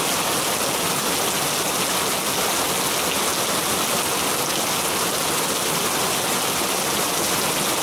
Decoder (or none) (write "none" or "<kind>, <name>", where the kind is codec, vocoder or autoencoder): none